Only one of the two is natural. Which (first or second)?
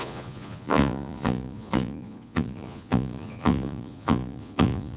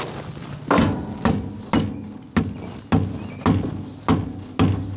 second